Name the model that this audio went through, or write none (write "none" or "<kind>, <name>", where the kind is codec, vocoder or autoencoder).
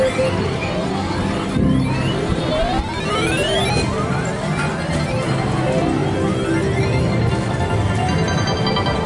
none